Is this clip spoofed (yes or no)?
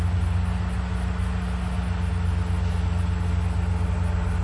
no